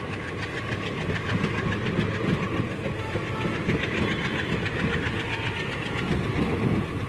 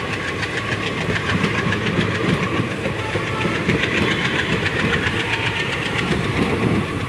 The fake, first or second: second